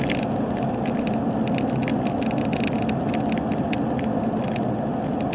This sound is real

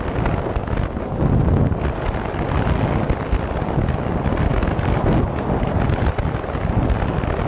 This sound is real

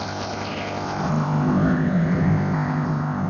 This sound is fake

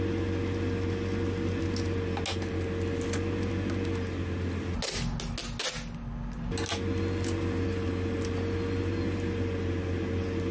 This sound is real